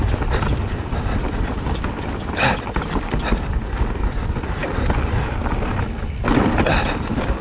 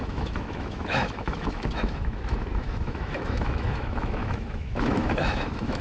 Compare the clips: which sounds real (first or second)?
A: first